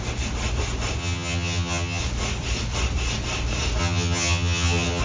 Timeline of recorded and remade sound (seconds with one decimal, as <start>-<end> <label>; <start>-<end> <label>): 0.0-1.0 recorded; 1.0-2.0 remade; 2.0-3.8 recorded; 3.8-5.0 remade